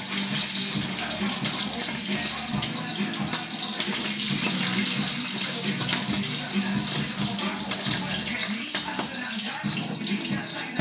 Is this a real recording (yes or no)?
yes